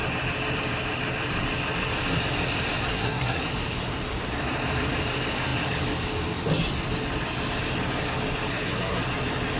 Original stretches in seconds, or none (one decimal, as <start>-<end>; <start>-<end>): 0.0-2.9; 3.4-8.5; 9.0-9.6